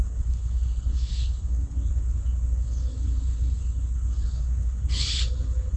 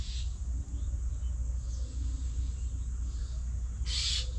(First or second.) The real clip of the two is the second